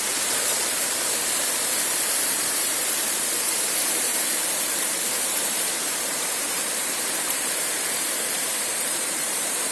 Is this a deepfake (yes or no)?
yes